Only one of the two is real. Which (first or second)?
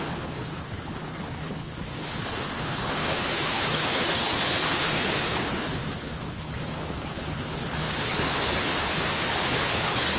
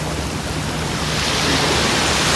second